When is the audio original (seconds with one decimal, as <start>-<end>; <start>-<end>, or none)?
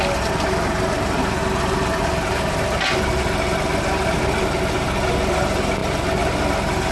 0.0-6.9